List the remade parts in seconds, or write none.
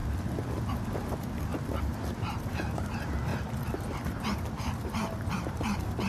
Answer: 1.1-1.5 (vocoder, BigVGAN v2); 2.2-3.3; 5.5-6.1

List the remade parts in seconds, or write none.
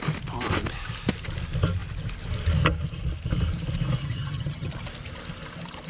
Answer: 4.0-4.7 (vocoder, HiFi-GAN)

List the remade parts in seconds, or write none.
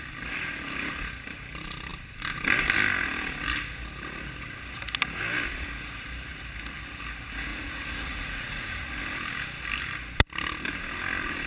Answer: 7.5-9.0 (vocoder, Vocos)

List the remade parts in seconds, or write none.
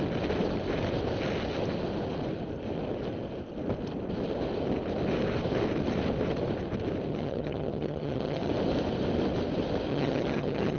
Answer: 7.1-8.5 (vocoder, HiFi-GAN); 9.9-10.8